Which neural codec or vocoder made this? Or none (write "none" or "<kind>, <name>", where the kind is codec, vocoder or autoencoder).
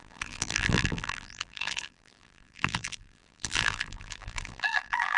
vocoder, BigVGAN v2